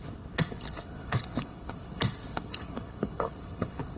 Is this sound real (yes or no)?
no